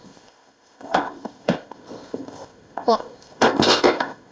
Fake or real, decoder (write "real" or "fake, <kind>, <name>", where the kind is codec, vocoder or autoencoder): fake, codec, ZipCodec